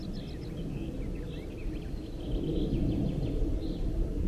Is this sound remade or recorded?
recorded